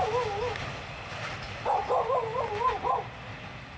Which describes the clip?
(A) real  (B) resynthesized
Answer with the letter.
A